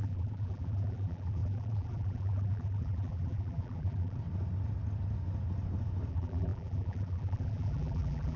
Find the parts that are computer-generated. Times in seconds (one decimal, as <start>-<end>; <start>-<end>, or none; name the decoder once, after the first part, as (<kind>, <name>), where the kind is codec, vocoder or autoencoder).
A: 0.0-4.2 (vocoder, BigVGAN v2); 6.1-8.4